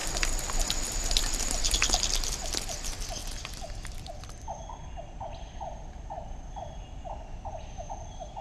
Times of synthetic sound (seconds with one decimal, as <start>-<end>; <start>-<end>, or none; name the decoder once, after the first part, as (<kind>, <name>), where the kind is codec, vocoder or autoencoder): 3.2-6.6 (vocoder, BigVGAN v2)